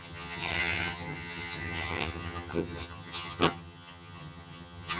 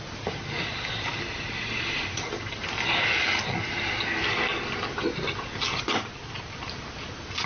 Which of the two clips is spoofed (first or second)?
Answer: first